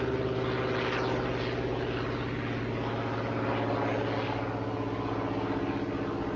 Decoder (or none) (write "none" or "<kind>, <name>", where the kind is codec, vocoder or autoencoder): none